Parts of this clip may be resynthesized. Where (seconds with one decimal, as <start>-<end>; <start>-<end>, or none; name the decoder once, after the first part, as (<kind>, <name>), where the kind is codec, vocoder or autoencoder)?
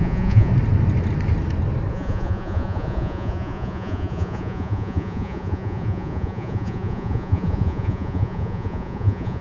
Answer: 0.0-0.5 (vocoder, Vocos); 1.9-9.4